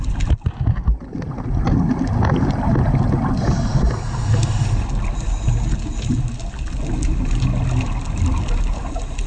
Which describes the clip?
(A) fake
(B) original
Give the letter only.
B